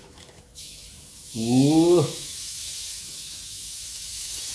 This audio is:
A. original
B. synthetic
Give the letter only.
B